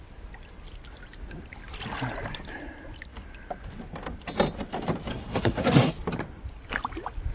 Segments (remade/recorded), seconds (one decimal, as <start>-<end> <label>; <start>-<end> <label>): 0.0-5.1 recorded; 5.1-5.9 remade; 5.9-7.3 recorded